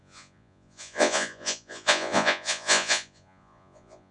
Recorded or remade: remade